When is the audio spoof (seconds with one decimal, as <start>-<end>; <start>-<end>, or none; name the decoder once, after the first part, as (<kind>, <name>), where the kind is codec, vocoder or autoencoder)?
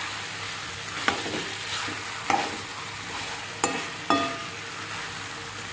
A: 2.7-3.2 (vocoder, BigVGAN v2)